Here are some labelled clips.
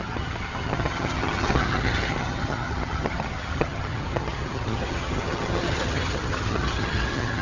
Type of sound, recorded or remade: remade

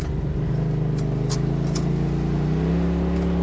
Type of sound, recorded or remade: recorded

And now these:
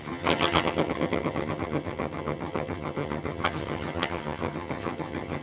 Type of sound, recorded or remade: remade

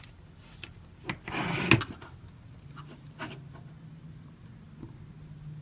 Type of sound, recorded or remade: recorded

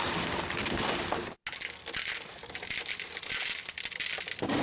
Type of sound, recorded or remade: recorded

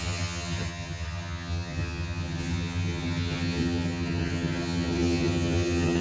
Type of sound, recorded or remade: remade